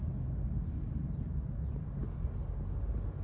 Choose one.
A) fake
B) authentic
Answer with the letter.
B